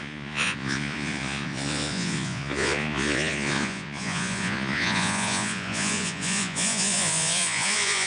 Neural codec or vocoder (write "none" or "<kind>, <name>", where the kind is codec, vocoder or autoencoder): vocoder, Vocos